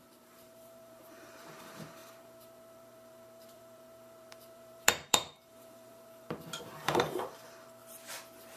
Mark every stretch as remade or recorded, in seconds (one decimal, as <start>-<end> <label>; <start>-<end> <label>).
0.0-7.8 remade; 7.8-8.6 recorded